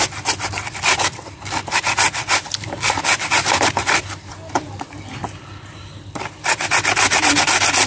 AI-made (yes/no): no